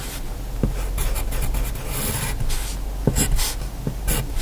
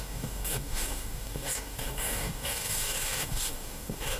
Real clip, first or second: first